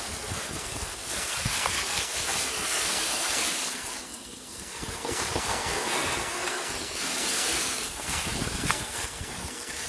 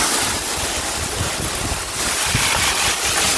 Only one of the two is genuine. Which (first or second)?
second